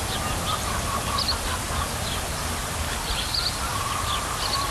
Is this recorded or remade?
recorded